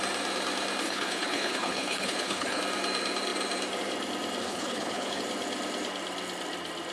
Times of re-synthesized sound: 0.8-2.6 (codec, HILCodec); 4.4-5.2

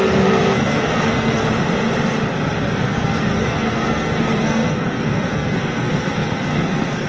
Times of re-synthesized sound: 0.0-1.4 (codec, SNAC); 2.6-7.1

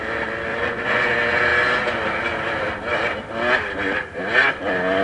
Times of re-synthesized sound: 0.5-1.1 (vocoder, Vocos)

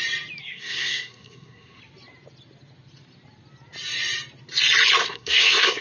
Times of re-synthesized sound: 0.4-1.8 (codec, SNAC); 5.0-5.8